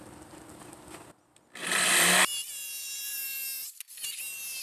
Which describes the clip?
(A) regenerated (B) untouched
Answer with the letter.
B